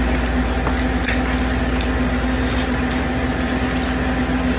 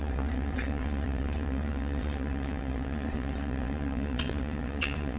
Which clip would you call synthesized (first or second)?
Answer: second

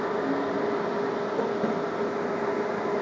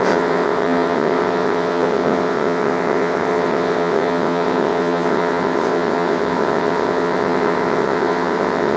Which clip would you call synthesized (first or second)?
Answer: second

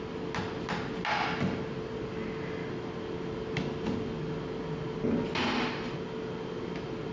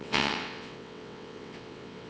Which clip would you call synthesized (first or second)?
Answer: second